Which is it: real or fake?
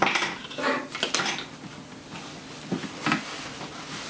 real